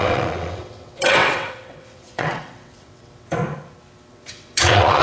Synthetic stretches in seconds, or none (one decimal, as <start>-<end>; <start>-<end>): 0.0-3.4; 4.1-5.0